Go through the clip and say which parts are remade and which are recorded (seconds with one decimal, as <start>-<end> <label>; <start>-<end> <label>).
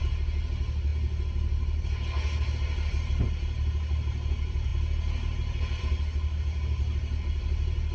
0.0-7.9 recorded